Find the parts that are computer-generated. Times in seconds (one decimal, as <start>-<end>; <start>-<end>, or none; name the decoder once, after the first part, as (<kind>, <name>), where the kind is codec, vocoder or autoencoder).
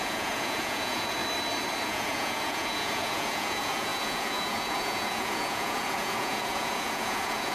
0.0-1.2 (vocoder, Vocos); 1.8-7.5